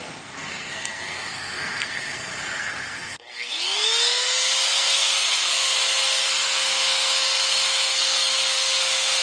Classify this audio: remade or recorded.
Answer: remade